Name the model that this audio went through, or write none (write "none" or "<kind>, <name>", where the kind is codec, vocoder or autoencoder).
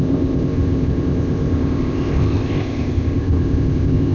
codec, ZipCodec